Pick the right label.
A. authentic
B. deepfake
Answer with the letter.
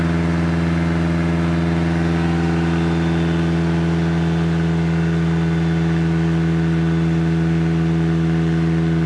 A